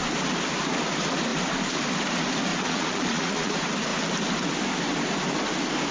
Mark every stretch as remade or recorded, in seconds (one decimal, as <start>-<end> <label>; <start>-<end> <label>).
0.0-2.5 recorded; 2.5-3.5 remade; 3.5-5.9 recorded